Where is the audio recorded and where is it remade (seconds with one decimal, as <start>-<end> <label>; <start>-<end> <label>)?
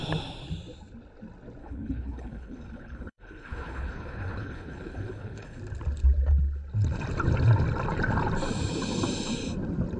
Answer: 0.0-1.6 recorded; 1.6-5.6 remade; 5.6-10.0 recorded